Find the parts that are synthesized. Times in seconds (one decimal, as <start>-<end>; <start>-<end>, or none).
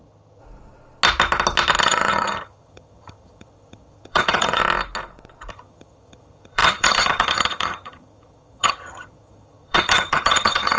0.0-0.4; 1.8-4.6; 5.5-10.8